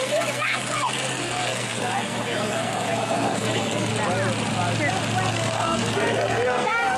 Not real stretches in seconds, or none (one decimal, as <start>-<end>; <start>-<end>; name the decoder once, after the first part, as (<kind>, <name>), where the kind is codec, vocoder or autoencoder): 0.0-3.9 (codec, SNAC); 5.3-7.0